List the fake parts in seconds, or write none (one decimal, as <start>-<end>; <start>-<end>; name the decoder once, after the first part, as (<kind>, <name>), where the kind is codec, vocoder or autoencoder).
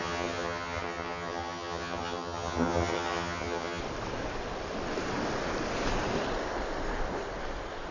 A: 0.0-3.8 (vocoder, HiFi-GAN)